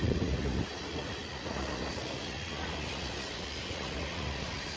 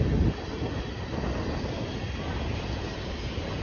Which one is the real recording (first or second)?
second